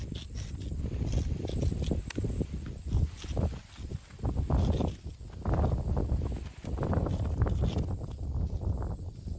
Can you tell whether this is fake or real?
real